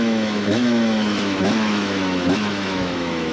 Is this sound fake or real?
fake